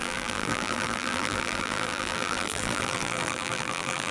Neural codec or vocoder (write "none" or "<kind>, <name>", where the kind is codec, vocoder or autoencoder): vocoder, BigVGAN v2